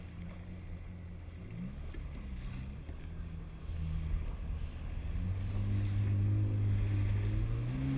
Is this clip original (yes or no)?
yes